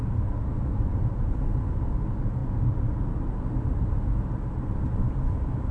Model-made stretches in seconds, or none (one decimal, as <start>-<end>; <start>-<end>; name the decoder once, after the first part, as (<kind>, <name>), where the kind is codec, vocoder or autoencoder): none